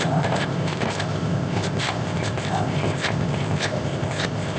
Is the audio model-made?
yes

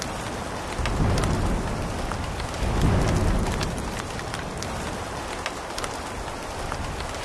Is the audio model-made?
no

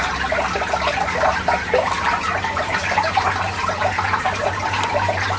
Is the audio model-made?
no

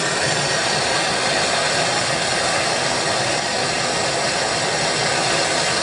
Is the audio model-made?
no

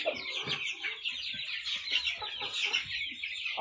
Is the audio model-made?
no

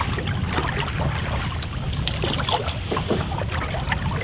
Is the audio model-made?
no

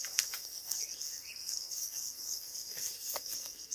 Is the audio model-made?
yes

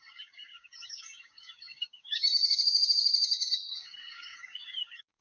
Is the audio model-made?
yes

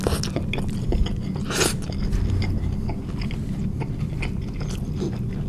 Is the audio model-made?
no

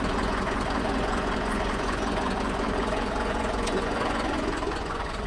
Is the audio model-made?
yes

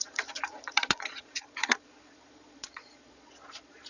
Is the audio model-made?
yes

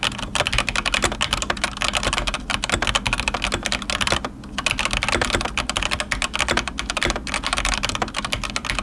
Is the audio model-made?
no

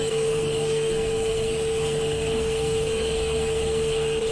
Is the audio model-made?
yes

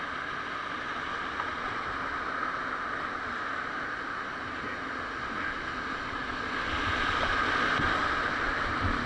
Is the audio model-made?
no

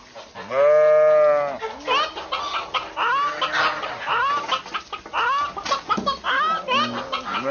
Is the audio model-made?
no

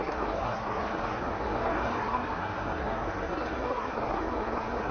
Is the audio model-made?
yes